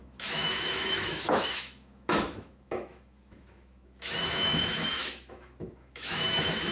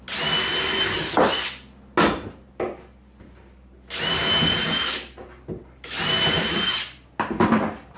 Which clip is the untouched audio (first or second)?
second